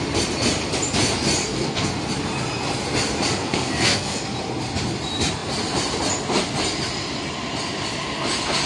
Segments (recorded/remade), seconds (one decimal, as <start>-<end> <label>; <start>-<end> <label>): 0.0-1.4 recorded; 1.4-1.9 remade; 1.9-3.4 recorded; 3.4-4.2 remade; 4.2-8.7 recorded

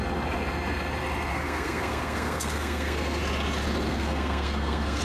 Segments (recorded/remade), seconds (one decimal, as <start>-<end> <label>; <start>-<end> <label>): 0.0-1.3 recorded; 1.3-3.2 remade; 3.2-3.9 recorded; 3.9-5.0 remade

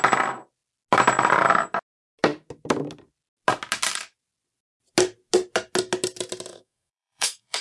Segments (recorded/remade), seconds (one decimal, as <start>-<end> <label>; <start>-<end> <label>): 0.0-6.5 recorded; 6.5-7.6 remade

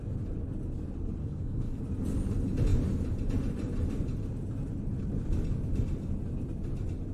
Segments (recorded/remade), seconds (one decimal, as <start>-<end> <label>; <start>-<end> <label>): 0.0-1.2 recorded; 1.2-1.8 remade; 1.8-7.1 recorded

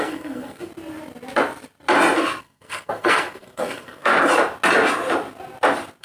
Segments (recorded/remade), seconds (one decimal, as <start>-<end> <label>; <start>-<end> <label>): 0.0-0.7 remade; 0.7-2.4 recorded; 2.4-4.1 remade; 4.1-6.0 recorded

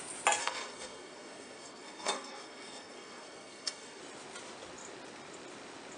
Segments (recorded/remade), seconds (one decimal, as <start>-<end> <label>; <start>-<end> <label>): 0.0-0.4 recorded; 0.4-4.0 remade; 4.0-6.0 recorded

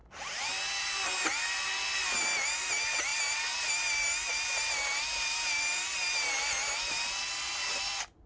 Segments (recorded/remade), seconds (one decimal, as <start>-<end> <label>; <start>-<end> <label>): 0.0-8.3 recorded